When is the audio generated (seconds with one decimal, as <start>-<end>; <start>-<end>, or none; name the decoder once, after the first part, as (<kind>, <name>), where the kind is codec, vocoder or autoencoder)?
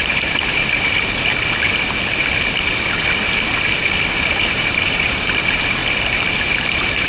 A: 0.0-1.3 (vocoder, BigVGAN v2); 4.3-5.8; 6.4-7.1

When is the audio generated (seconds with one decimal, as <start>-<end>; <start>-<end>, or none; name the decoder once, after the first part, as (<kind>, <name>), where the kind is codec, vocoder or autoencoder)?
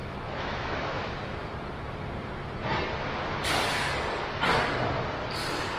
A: 0.0-1.1 (autoencoder, DAC-VAE)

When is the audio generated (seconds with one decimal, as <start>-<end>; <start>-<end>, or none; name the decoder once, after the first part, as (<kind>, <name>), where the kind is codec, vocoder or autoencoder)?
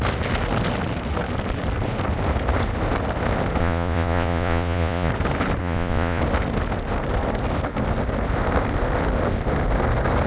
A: 3.6-5.1 (vocoder, Vocos); 5.6-6.2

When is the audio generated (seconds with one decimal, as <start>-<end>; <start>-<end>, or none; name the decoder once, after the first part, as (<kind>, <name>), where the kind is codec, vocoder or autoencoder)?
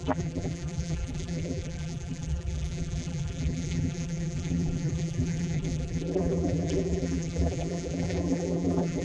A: 0.0-9.0 (vocoder, BigVGAN v2)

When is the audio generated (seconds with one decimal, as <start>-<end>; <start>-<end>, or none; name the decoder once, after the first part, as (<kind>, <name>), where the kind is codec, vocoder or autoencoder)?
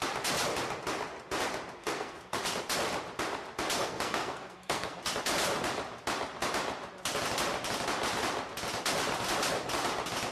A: 1.8-2.4 (codec, SNAC); 3.8-5.0